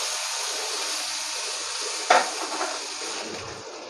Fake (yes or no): no